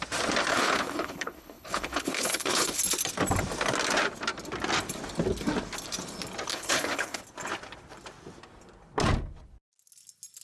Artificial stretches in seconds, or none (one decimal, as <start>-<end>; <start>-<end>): 0.5-2.8; 6.5-7.2